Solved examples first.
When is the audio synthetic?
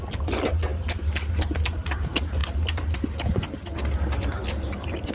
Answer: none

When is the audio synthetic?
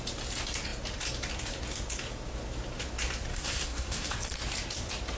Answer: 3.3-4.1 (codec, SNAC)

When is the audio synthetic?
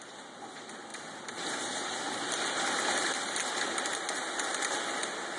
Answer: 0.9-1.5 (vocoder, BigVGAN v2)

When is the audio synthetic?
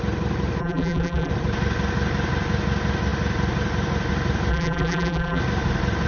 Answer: 0.6-1.3 (vocoder, BigVGAN v2); 4.5-5.4